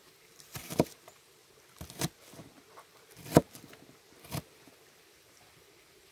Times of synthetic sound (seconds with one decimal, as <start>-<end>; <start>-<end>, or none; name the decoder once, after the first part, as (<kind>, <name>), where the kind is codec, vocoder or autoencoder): 0.0-1.4 (vocoder, BigVGAN v2); 5.1-6.1